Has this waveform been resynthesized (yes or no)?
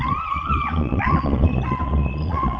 yes